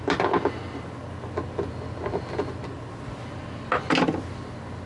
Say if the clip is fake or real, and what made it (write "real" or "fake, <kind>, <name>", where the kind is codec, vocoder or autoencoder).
real